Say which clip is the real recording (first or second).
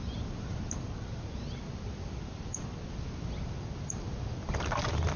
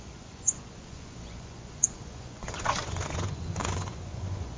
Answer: first